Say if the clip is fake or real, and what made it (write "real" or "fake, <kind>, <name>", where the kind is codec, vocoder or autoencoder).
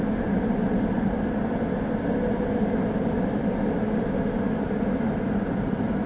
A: real